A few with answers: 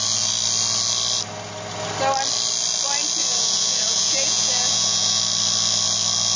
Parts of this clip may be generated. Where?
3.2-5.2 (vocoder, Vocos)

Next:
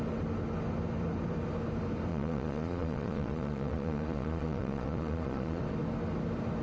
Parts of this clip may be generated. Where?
2.1-5.6 (vocoder, Vocos)

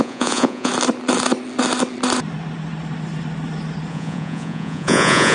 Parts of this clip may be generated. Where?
0.0-0.7 (vocoder, Vocos); 3.9-5.3

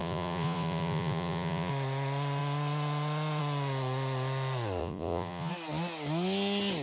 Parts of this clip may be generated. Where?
0.0-1.7 (vocoder, Vocos); 4.8-5.5

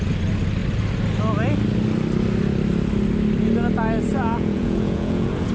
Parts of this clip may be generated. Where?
4.1-5.5 (vocoder, Vocos)

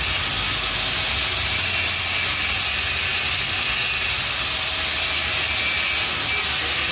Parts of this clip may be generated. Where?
none

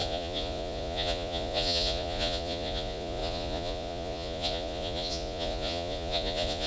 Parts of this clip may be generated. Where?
0.0-6.7 (vocoder, Vocos)

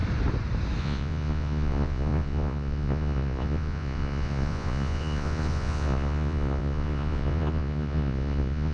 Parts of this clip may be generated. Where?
0.8-8.7 (vocoder, Vocos)